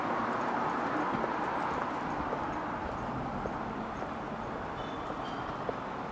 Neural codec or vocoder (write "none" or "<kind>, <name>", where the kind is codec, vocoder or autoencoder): none